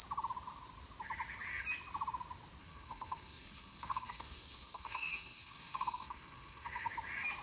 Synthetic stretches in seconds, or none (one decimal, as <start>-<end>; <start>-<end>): 2.6-6.9